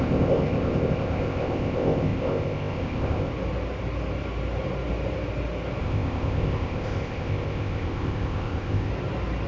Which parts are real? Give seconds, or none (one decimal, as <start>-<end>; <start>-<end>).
3.3-5.8; 8.9-9.5